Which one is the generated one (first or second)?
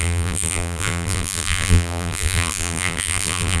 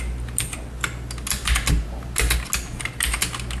first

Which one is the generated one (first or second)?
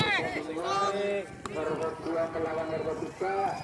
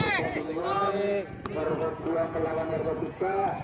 second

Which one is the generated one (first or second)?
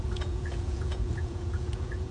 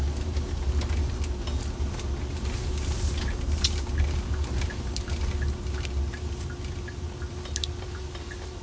first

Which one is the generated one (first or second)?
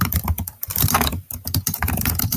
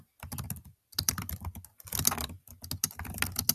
first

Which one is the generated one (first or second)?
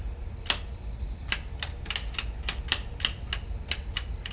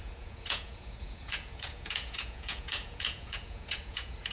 second